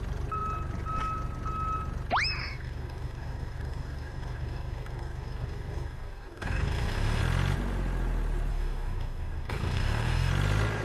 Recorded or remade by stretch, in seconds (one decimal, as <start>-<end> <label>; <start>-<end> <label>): 0.0-2.4 recorded; 2.4-7.2 remade; 7.2-8.5 recorded; 8.5-10.3 remade; 10.3-10.8 recorded